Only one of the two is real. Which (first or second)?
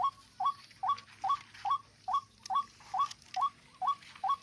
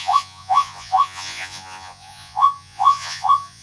first